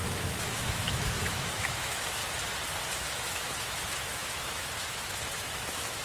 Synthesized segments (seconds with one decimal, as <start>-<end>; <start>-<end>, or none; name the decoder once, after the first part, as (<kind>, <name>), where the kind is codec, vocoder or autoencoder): 0.0-2.2 (autoencoder, DAC-VAE); 2.9-6.0